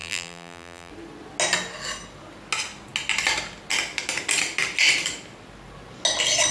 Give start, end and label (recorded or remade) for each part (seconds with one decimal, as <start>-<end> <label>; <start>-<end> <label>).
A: 0.0-0.9 remade; 0.9-6.5 recorded